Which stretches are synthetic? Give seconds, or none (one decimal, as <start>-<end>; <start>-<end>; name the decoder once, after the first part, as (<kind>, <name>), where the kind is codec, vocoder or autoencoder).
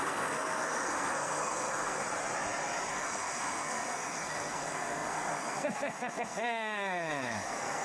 0.0-2.0 (codec, SNAC); 2.9-7.8